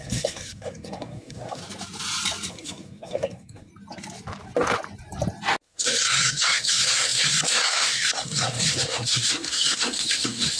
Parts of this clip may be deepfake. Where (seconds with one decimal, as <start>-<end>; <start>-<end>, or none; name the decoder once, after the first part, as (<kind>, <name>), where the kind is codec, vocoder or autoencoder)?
0.0-1.6 (codec, SNAC); 2.5-3.7; 5.6-10.6